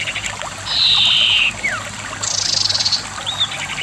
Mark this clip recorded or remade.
recorded